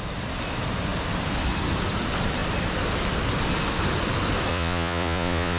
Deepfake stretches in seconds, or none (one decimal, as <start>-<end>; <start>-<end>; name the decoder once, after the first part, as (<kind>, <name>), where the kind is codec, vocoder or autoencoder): 4.5-5.6 (vocoder, Vocos)